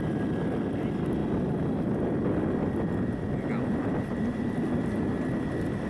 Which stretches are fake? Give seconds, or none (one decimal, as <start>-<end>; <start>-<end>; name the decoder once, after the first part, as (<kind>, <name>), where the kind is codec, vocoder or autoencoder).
none